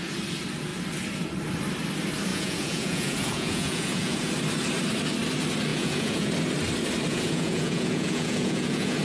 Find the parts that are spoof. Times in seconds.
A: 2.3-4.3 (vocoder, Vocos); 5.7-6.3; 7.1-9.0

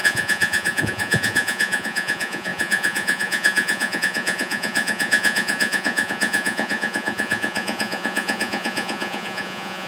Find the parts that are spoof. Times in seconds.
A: 0.0-9.9 (vocoder, Vocos)

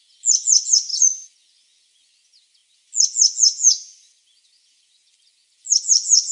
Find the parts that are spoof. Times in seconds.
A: 0.9-2.1 (vocoder, Vocos)

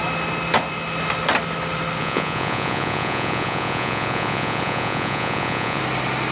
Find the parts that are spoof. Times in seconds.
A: 2.0-5.8 (vocoder, Vocos)

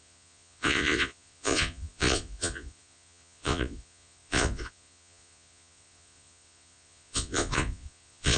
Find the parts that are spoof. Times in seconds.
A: 0.0-8.4 (vocoder, Vocos)

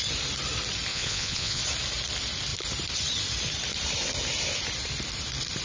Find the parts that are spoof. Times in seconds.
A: 0.9-1.6 (vocoder, Vocos)

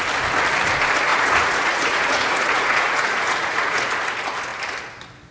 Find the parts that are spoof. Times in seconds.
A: 1.1-3.9 (vocoder, Vocos)